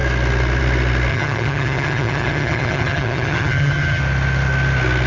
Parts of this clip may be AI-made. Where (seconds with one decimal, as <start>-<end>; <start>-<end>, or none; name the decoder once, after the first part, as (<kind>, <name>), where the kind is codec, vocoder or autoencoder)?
1.1-4.0 (vocoder, HiFi-GAN)